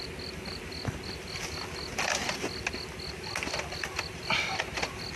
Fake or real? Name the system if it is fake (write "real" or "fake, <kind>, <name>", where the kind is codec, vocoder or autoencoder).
real